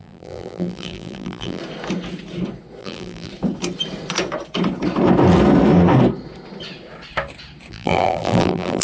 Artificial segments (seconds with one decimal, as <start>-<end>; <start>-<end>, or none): 0.0-1.6; 2.8-3.3; 7.7-8.8

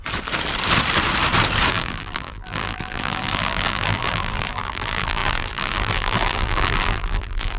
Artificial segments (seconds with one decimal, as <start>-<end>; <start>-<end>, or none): 1.7-7.6